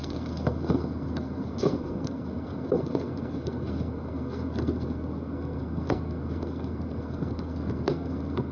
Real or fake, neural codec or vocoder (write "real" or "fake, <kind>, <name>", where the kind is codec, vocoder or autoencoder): fake, codec, SNAC